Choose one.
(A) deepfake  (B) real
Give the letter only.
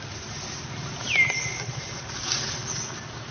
B